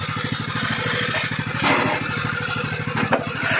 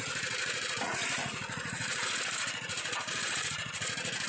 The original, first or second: first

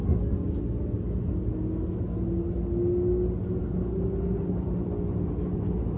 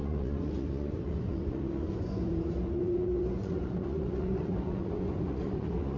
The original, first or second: first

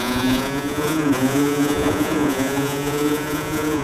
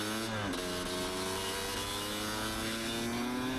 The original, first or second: second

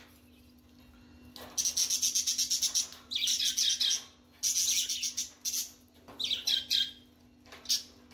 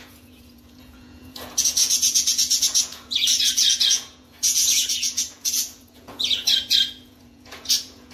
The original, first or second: first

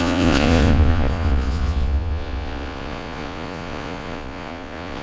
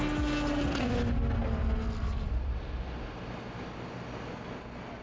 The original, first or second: second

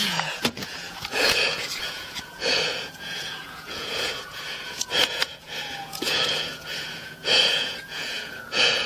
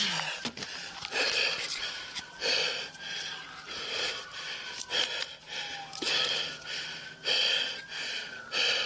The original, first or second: second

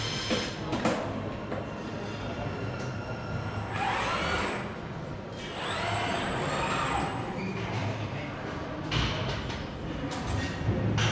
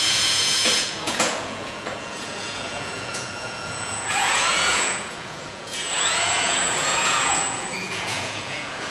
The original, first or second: first